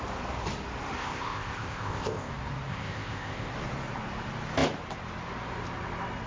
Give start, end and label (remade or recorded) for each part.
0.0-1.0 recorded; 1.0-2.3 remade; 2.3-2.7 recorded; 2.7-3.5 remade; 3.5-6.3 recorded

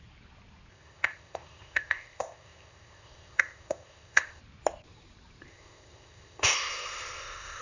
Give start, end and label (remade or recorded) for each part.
0.0-0.7 recorded; 0.7-4.4 remade; 4.4-5.5 recorded; 5.5-7.6 remade

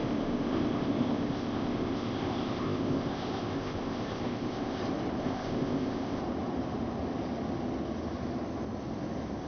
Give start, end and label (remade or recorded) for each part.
0.0-4.8 remade; 4.8-5.2 recorded; 5.2-6.2 remade; 6.2-9.5 recorded

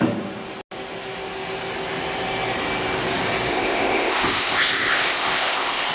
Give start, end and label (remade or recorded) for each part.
0.0-3.5 recorded; 3.5-5.9 remade

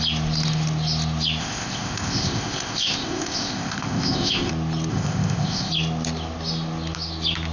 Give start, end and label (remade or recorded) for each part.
0.0-1.4 recorded; 1.4-4.5 remade; 4.5-4.9 recorded; 4.9-5.7 remade; 5.7-7.5 recorded

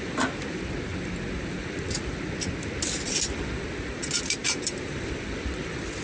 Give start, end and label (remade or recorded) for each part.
0.0-6.0 recorded

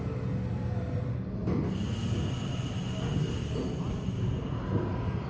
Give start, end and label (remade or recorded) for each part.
0.0-5.3 recorded